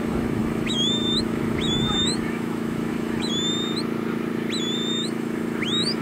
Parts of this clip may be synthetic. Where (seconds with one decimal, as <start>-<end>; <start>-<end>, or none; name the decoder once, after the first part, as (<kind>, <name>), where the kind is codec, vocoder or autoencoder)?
0.0-3.3 (autoencoder, DAC-VAE); 4.9-6.0